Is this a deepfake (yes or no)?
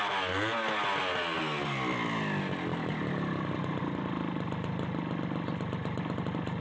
no